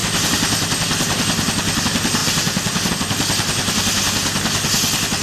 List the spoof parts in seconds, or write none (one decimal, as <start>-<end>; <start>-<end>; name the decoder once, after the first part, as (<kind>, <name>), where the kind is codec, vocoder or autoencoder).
none